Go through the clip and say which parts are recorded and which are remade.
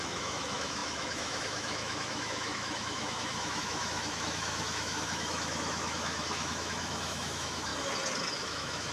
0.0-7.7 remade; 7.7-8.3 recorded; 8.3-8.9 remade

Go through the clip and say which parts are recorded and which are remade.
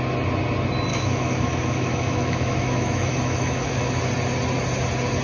0.0-0.9 recorded; 0.9-4.0 remade; 4.0-5.2 recorded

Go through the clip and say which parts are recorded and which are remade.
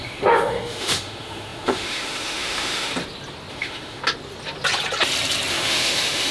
0.0-2.9 remade; 2.9-3.5 recorded; 3.5-4.0 remade; 4.0-5.5 recorded; 5.5-6.3 remade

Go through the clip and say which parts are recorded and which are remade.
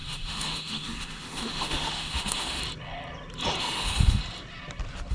0.0-2.6 remade; 2.6-3.6 recorded; 3.6-4.2 remade; 4.2-5.1 recorded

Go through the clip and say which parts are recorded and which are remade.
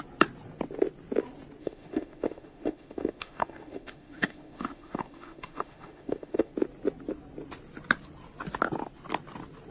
0.0-1.6 recorded; 1.6-6.5 remade; 6.5-9.7 recorded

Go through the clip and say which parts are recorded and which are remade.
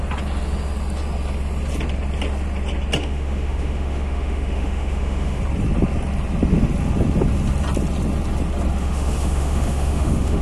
0.0-3.0 recorded; 3.0-5.4 remade; 5.4-8.8 recorded; 8.8-10.4 remade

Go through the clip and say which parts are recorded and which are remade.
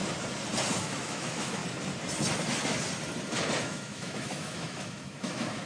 0.0-0.8 recorded; 0.8-1.6 remade; 1.6-3.6 recorded; 3.6-5.7 remade